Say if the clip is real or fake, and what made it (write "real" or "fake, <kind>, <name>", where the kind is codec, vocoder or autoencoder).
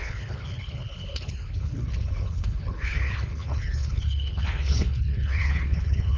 fake, codec, HILCodec